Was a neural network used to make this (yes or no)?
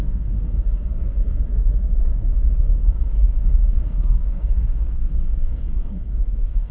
yes